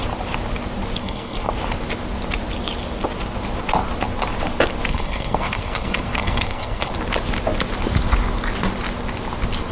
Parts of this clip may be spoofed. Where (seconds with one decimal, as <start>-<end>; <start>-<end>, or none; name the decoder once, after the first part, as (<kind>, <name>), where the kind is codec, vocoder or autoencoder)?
1.0-1.5 (codec, SNAC); 4.9-6.9